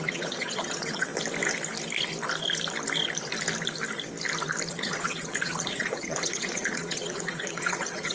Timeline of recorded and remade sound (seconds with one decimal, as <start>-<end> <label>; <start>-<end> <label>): 0.0-1.1 remade; 1.1-4.7 recorded; 4.7-8.1 remade